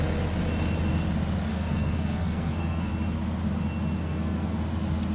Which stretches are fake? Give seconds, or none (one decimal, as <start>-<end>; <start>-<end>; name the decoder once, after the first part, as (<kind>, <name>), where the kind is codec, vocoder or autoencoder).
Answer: 1.5-2.9 (codec, SNAC); 4.0-4.6